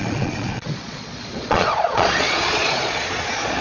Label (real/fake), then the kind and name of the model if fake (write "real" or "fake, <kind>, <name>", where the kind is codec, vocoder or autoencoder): fake, vocoder, Vocos